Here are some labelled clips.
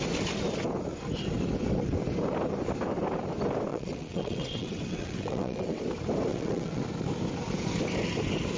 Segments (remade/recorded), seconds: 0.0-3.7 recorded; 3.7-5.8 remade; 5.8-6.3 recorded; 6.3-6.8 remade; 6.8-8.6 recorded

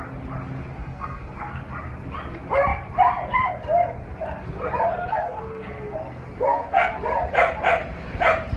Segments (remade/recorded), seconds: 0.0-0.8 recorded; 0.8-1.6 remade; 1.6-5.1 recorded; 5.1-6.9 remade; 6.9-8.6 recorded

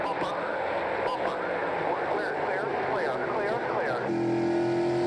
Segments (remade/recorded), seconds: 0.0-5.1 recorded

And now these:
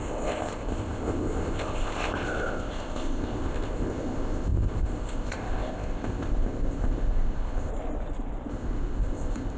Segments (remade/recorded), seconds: 0.0-7.7 remade; 7.7-8.5 recorded; 8.5-9.6 remade